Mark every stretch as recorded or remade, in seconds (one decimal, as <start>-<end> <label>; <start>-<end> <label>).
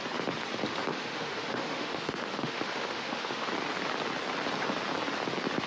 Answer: 0.0-0.9 recorded; 0.9-3.5 remade; 3.5-5.7 recorded